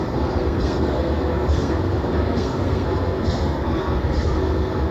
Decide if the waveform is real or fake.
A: fake